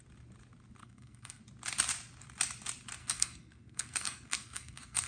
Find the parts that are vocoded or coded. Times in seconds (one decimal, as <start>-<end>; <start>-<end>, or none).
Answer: 0.8-1.4; 3.0-5.1